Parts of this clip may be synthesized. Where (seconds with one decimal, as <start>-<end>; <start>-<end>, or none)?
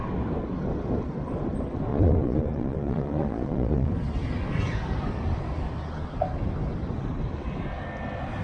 1.9-3.9